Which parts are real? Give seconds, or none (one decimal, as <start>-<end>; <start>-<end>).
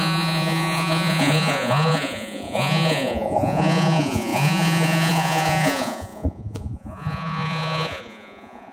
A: none